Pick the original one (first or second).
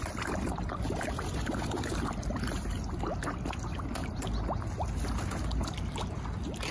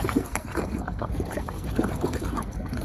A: first